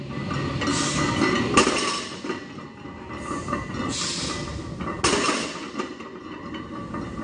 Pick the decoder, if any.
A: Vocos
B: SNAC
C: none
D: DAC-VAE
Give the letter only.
C